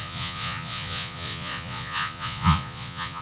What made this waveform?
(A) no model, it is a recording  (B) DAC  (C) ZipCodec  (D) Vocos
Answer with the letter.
D